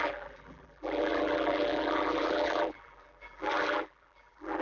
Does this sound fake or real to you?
fake